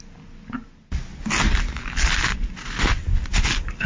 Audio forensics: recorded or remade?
recorded